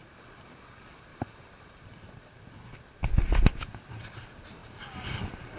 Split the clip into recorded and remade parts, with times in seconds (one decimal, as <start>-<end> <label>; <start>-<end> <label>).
0.0-1.1 recorded; 1.1-1.8 remade; 1.8-4.6 recorded; 4.6-5.6 remade